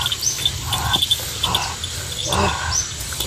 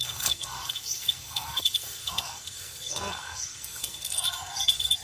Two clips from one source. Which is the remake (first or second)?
second